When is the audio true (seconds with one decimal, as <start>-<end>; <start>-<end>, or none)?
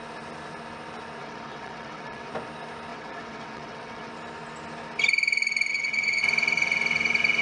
0.0-1.2; 2.3-2.9; 4.1-5.7; 6.2-7.4